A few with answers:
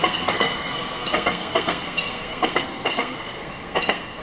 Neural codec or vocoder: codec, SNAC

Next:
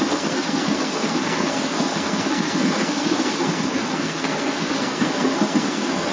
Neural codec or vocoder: codec, SNAC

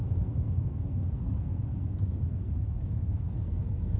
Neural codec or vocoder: codec, SNAC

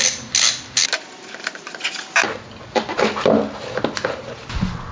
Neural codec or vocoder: none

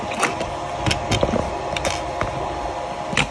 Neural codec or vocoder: none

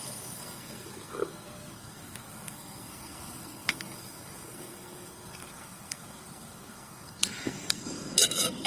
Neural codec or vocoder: codec, SNAC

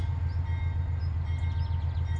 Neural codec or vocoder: none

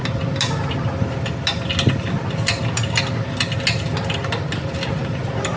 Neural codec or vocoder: none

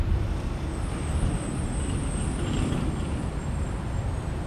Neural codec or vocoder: none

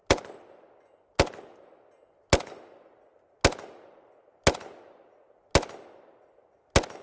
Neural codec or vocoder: none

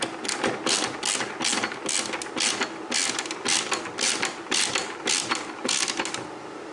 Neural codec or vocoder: none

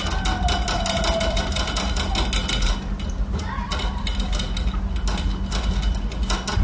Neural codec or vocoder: none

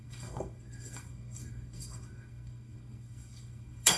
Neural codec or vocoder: codec, SNAC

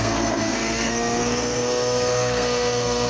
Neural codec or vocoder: codec, SNAC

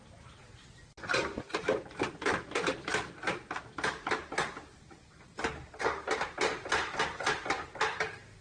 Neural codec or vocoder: none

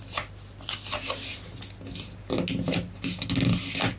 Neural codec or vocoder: none